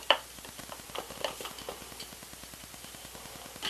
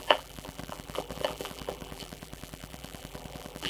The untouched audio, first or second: first